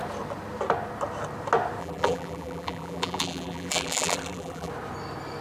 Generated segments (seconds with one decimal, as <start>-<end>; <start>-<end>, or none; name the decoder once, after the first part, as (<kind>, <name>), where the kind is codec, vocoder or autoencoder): 1.8-4.7 (vocoder, BigVGAN v2)